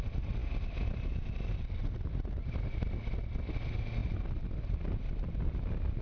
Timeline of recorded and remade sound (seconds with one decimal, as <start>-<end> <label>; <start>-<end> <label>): 0.0-6.0 recorded